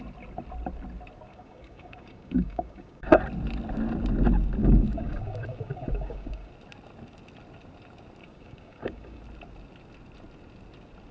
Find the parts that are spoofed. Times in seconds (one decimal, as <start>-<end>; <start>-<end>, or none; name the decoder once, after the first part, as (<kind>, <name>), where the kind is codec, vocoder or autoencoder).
1.3-3.2 (codec, DAC); 4.6-6.5; 8.2-9.2